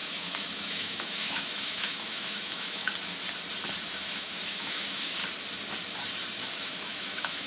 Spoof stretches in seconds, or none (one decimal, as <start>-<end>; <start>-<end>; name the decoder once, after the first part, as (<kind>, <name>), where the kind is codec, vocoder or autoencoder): 0.0-2.8 (autoencoder, DAC-VAE); 3.9-5.2; 6.4-7.5